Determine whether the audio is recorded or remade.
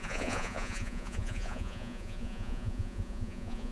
remade